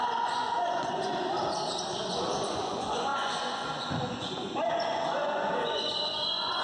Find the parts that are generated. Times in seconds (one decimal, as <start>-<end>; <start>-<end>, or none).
0.0-1.1; 2.5-6.6